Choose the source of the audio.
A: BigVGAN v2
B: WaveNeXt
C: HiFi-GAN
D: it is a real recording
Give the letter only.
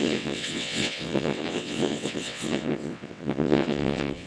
B